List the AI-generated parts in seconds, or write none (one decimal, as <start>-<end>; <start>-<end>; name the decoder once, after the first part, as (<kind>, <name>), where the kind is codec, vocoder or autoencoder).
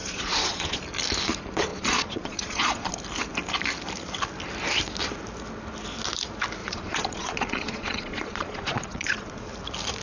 0.0-0.8 (vocoder, Vocos); 1.7-2.9; 6.6-9.5